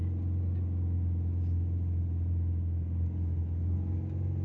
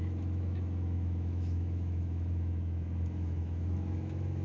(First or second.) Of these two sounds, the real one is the first